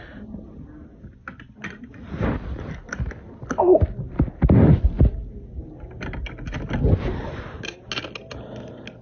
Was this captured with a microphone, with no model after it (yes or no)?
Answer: yes